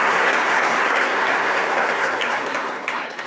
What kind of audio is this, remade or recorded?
remade